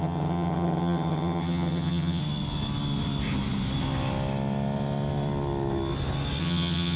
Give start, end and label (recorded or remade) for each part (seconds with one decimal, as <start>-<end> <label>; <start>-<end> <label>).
0.0-2.2 remade; 2.2-6.4 recorded; 6.4-7.0 remade